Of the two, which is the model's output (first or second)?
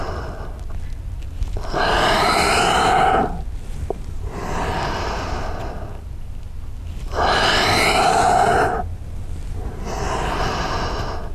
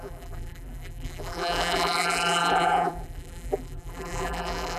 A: second